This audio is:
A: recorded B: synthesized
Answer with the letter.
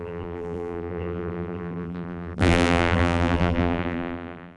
B